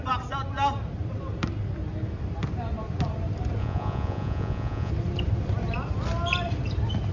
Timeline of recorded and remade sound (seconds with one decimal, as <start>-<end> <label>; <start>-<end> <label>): 0.0-3.6 recorded; 3.6-4.9 remade; 4.9-7.1 recorded